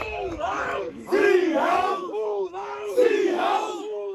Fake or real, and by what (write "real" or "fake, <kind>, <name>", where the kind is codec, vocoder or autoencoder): fake, codec, DAC